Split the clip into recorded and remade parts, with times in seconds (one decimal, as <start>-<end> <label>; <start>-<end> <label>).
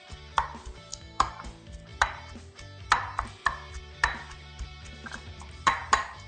0.0-0.9 recorded; 0.9-1.4 remade; 1.4-6.3 recorded